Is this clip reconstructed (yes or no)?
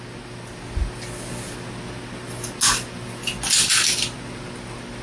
no